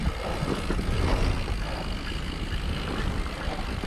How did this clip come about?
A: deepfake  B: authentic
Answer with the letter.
B